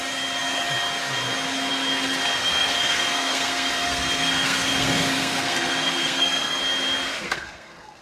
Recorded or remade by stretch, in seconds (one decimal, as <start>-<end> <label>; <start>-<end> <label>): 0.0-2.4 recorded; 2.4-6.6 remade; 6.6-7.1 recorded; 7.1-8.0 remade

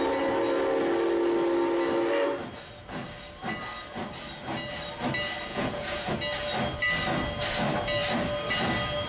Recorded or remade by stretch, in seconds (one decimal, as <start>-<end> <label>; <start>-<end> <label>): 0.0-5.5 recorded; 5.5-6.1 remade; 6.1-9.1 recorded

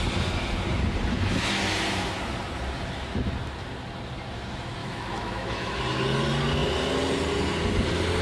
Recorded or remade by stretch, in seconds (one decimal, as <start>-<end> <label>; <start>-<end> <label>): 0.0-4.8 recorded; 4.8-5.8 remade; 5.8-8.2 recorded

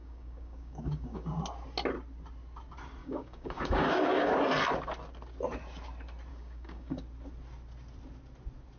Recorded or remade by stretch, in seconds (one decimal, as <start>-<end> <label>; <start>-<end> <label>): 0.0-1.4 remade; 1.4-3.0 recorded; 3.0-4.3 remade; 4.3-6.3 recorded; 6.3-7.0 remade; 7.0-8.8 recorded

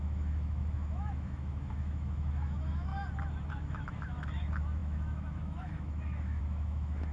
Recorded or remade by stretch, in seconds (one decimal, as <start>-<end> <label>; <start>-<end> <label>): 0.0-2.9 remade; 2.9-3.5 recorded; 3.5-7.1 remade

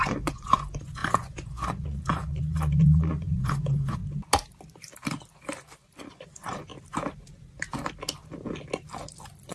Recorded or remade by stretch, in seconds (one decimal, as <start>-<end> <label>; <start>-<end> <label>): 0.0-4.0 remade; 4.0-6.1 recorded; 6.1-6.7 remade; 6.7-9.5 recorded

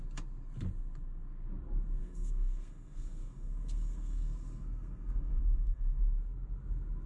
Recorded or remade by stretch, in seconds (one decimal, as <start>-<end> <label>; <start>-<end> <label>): 0.0-2.0 recorded; 2.0-6.0 remade; 6.0-7.1 recorded

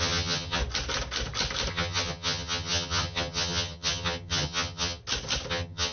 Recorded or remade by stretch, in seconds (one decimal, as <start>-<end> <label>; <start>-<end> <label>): 0.0-0.6 remade; 0.6-1.7 recorded; 1.7-5.0 remade; 5.0-5.5 recorded; 5.5-5.9 remade